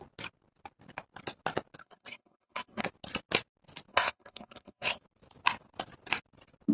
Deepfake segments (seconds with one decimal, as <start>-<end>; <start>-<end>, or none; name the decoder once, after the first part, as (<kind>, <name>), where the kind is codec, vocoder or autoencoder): 1.8-2.8 (codec, SNAC); 3.9-5.0